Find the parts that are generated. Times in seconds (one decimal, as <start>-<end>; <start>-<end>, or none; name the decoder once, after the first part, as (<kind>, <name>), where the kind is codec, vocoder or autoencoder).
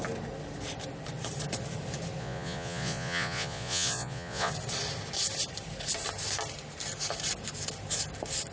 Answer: 2.2-4.5 (vocoder, Vocos)